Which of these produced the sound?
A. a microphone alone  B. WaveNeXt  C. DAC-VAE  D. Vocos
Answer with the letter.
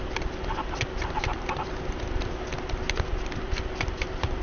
A